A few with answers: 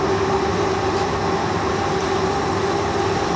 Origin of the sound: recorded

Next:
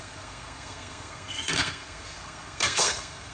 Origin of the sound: remade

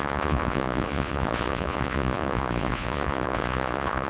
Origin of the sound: remade